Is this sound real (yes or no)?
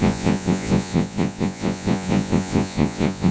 no